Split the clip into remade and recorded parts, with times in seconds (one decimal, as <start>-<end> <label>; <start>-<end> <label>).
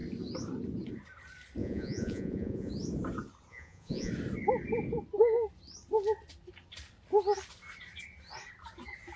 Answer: 0.0-1.6 recorded; 1.6-2.7 remade; 2.7-3.5 recorded; 3.5-4.1 remade; 4.1-9.2 recorded